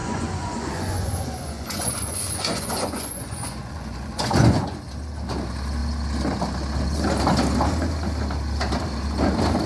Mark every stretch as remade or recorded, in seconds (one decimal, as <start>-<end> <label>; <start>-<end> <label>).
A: 0.0-4.8 remade; 4.8-9.7 recorded